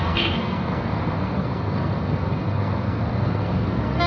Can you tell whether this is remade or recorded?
remade